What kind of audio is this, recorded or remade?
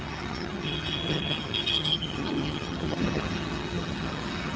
remade